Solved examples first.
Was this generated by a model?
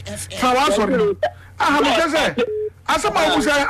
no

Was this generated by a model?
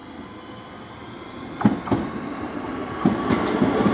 no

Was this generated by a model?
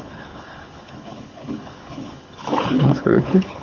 yes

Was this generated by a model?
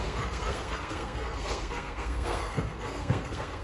yes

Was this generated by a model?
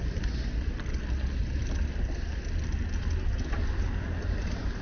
no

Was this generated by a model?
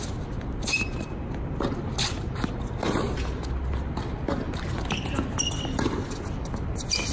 no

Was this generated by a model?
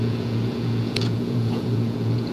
yes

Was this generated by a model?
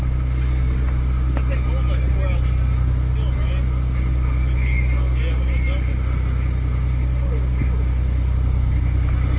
no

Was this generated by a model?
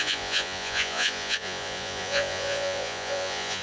yes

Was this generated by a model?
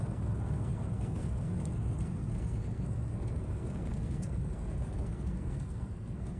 yes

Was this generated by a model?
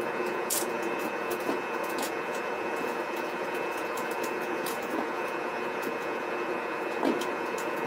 yes